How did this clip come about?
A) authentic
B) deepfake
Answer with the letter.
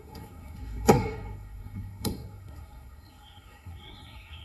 B